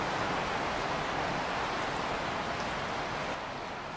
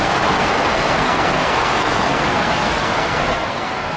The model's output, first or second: second